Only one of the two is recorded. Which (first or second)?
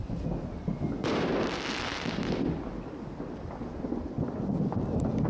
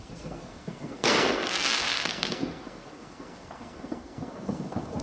first